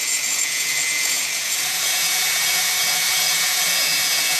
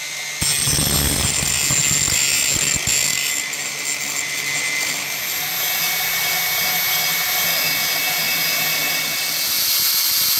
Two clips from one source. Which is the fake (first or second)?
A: first